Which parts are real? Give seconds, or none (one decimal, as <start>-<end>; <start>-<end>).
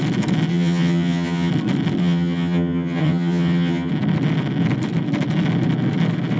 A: 0.0-0.5; 1.5-2.0; 3.9-6.4